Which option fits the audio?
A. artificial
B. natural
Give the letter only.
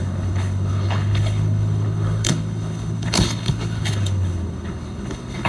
A